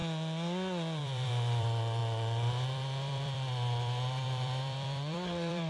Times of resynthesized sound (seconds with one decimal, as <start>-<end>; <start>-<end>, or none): 1.0-5.7